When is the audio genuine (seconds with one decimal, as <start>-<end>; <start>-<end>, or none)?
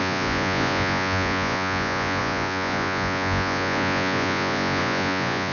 none